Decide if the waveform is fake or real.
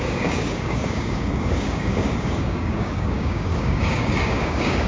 fake